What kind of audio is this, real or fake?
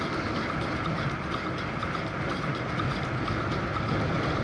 real